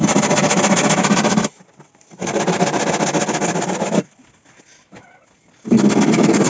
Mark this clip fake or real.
real